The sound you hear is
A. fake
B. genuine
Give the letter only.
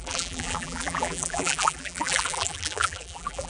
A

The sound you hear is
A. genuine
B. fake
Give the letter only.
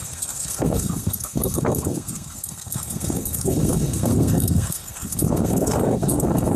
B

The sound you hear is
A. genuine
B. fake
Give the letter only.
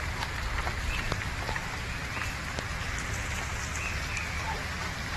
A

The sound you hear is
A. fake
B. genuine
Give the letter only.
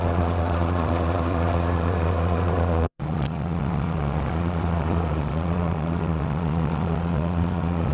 A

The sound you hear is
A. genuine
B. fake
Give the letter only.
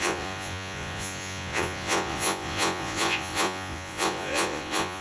B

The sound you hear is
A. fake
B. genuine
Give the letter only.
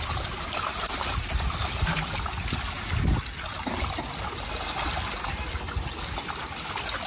B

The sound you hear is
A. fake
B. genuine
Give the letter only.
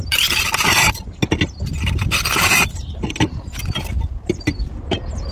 B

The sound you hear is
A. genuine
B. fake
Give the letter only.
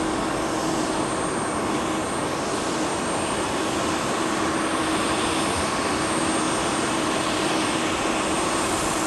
A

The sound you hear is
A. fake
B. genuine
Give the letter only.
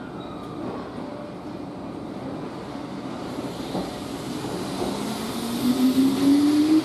B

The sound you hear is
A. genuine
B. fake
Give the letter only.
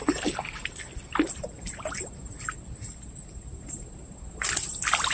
A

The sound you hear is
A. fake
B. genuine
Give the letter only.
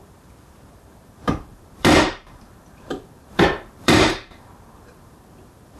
A